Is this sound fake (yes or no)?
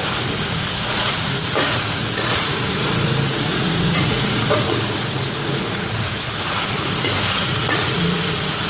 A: yes